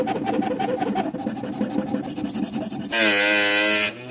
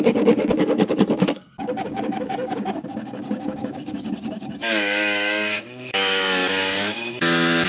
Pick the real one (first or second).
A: first